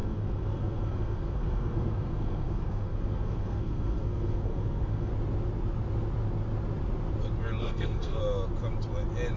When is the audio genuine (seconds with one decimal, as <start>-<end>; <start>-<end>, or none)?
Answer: 5.1-7.6; 8.2-9.4